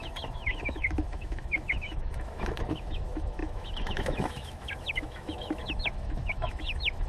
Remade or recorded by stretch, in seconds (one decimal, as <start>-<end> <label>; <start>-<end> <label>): 0.0-7.1 remade